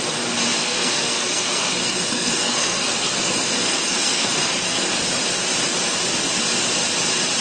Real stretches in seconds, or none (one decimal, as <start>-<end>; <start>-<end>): 0.0-0.6; 5.0-7.4